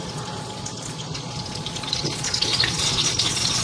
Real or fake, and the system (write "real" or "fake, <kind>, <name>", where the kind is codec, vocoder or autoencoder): fake, vocoder, Vocos